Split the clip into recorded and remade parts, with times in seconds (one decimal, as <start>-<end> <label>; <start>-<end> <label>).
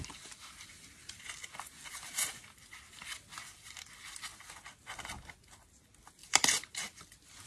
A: 0.0-6.2 recorded; 6.2-7.0 remade; 7.0-7.5 recorded